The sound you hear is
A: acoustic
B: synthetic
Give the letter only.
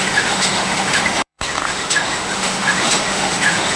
B